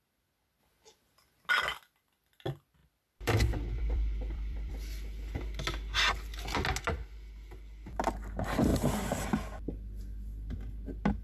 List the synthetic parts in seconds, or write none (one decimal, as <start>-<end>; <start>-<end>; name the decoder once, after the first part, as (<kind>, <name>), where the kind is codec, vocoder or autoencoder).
2.8-4.7 (vocoder, BigVGAN v2)